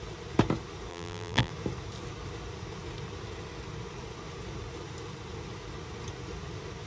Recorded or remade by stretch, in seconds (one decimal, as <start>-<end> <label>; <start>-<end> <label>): 0.0-0.9 recorded; 0.9-1.5 remade; 1.5-6.9 recorded